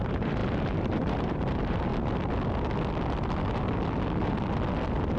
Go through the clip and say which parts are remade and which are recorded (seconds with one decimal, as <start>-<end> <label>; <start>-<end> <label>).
0.0-1.9 remade; 1.9-5.2 recorded